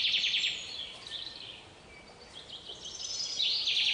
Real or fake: real